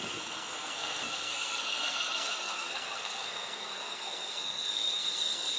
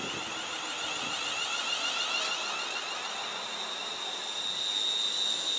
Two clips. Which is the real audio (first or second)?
second